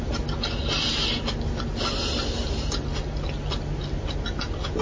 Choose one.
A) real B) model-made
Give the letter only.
A